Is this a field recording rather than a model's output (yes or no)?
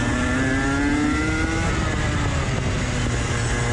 yes